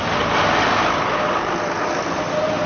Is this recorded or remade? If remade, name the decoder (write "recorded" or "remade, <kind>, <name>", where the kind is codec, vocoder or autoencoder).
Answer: recorded